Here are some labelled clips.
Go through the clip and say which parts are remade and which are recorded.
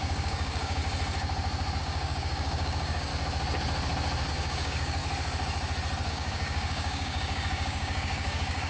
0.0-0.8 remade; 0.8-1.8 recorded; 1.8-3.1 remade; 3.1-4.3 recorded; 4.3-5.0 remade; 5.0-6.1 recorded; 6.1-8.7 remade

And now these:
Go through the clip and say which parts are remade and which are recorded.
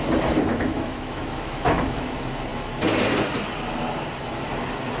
0.0-0.5 recorded; 0.5-2.0 remade; 2.0-5.0 recorded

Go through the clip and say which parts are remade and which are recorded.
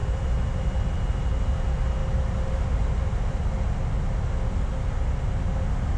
0.0-2.0 recorded; 2.0-3.4 remade; 3.4-6.0 recorded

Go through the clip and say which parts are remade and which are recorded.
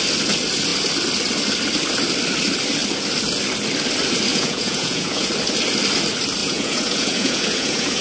0.0-4.3 recorded; 4.3-5.3 remade; 5.3-6.4 recorded; 6.4-8.0 remade